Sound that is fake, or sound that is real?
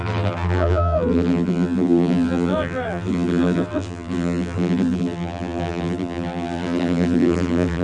fake